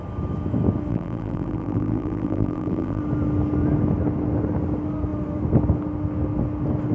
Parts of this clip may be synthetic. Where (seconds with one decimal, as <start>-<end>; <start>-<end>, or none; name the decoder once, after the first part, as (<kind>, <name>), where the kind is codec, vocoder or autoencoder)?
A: 0.9-3.0 (vocoder, BigVGAN v2)